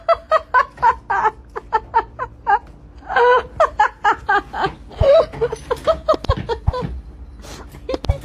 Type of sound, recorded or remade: recorded